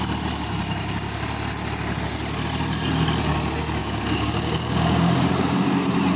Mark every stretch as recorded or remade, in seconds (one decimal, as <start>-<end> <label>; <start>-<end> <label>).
0.0-3.8 recorded; 3.8-5.3 remade; 5.3-6.2 recorded